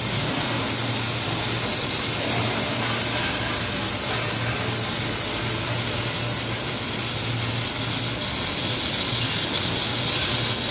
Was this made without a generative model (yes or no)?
yes